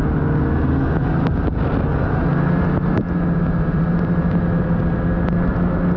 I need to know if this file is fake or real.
real